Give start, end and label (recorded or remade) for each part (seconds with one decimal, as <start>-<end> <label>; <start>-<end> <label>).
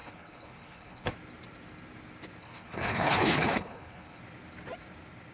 0.0-1.1 remade; 1.1-2.4 recorded; 2.4-4.2 remade; 4.2-5.3 recorded